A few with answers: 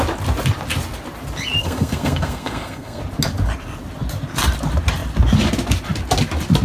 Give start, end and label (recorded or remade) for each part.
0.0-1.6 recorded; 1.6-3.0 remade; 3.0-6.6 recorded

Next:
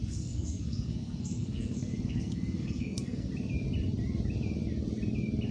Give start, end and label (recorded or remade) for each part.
0.0-3.3 remade; 3.3-5.5 recorded

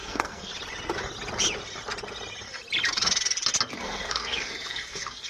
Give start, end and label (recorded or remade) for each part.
0.0-0.5 remade; 0.5-3.7 recorded; 3.7-5.3 remade

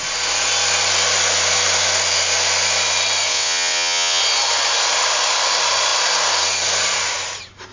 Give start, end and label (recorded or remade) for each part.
0.0-3.3 recorded; 3.3-4.2 remade; 4.2-7.7 recorded

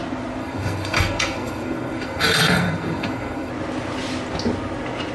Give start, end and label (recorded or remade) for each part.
0.0-0.4 recorded; 0.4-3.5 remade; 3.5-5.1 recorded

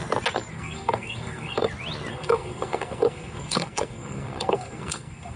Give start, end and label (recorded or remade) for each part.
0.0-0.5 recorded; 0.5-1.7 remade; 1.7-2.1 recorded; 2.1-5.4 remade